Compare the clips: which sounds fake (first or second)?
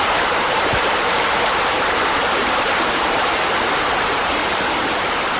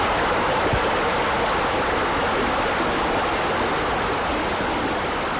first